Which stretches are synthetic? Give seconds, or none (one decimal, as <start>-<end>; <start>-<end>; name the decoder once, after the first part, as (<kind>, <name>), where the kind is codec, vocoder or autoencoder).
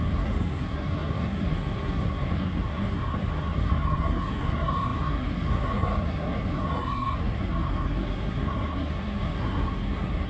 0.0-10.3 (codec, SNAC)